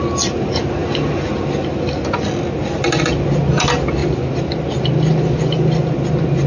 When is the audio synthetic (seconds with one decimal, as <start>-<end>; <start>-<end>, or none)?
none